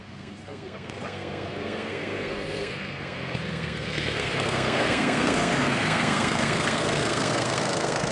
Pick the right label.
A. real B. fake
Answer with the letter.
B